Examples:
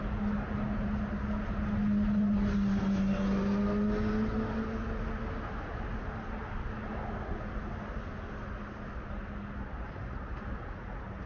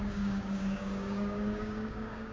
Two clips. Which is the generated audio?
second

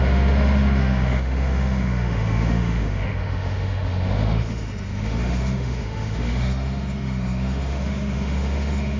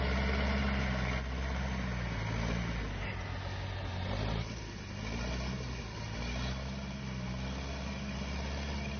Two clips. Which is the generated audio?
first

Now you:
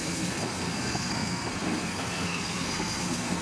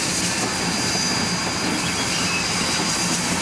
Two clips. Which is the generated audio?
first